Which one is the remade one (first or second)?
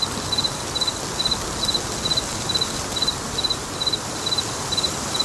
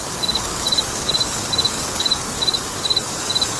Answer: second